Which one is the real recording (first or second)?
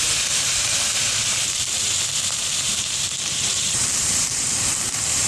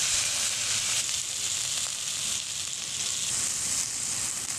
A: second